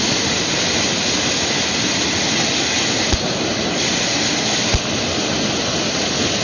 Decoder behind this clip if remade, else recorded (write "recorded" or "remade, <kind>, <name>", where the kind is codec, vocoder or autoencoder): recorded